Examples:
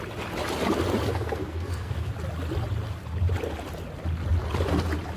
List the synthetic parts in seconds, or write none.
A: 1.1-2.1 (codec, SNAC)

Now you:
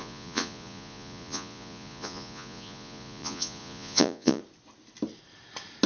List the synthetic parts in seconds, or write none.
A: 0.0-4.4 (vocoder, Vocos)

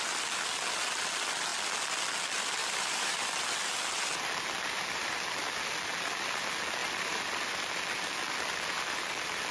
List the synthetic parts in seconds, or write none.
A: 2.6-3.4 (vocoder, BigVGAN v2); 6.8-7.8

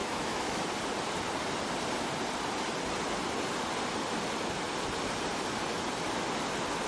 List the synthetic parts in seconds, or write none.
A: 0.0-0.6 (autoencoder, DAC-VAE)

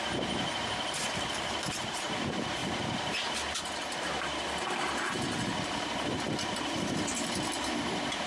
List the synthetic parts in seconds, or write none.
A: 0.0-8.3 (vocoder, BigVGAN v2)

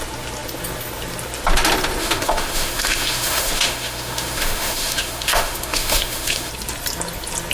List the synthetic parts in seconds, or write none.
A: 2.0-6.5 (autoencoder, DAC-VAE)

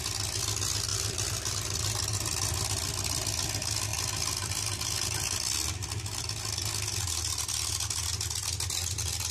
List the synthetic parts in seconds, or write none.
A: 0.9-1.5 (vocoder, BigVGAN v2)

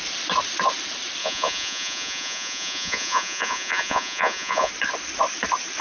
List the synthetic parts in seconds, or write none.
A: 1.2-4.7 (vocoder, Vocos)